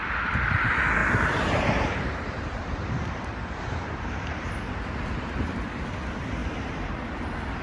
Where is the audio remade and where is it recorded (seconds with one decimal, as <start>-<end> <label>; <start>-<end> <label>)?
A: 0.0-1.0 recorded; 1.0-5.4 remade; 5.4-6.4 recorded; 6.4-7.0 remade; 7.0-7.6 recorded